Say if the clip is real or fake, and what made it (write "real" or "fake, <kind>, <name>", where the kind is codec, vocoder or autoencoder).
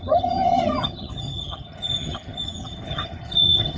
fake, vocoder, HiFi-GAN